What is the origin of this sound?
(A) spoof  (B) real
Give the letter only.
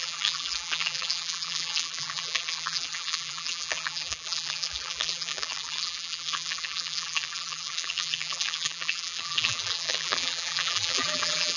A